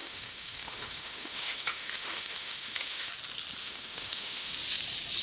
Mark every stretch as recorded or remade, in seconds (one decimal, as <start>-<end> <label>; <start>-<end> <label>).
0.0-3.1 remade; 3.1-3.6 recorded; 3.6-4.5 remade; 4.5-5.2 recorded